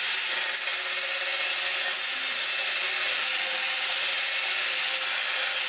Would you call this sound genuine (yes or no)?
yes